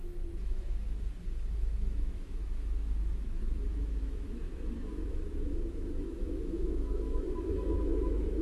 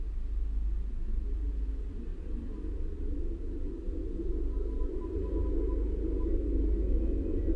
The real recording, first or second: second